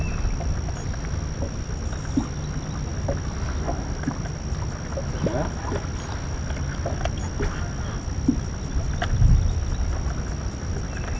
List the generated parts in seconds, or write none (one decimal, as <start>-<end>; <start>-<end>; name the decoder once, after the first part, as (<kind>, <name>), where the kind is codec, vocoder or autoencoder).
none